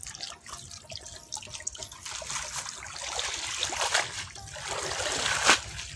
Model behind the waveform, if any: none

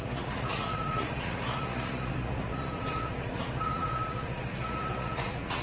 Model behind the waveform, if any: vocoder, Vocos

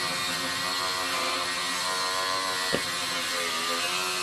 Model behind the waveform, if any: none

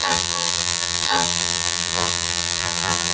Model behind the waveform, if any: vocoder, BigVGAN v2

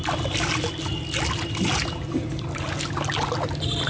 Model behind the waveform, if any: none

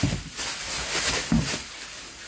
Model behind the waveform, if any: none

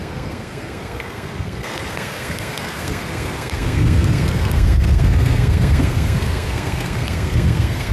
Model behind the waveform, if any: codec, SNAC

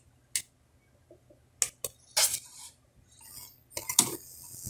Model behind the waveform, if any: none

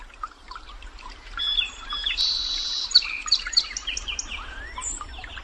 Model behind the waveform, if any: vocoder, BigVGAN v2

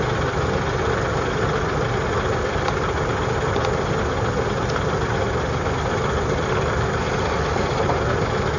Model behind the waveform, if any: none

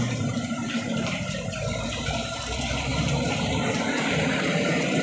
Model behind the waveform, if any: vocoder, BigVGAN v2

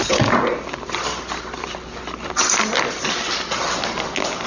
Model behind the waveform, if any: none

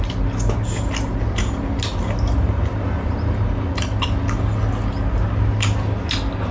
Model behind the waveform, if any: none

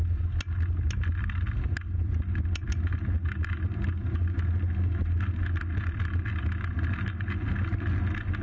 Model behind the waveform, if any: none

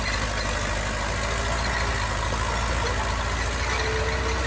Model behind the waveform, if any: none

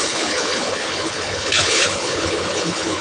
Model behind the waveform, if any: codec, HILCodec